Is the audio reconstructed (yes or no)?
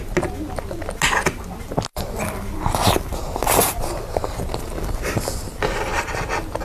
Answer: no